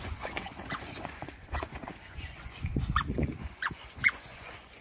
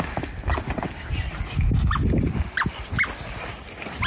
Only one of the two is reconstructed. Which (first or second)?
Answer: first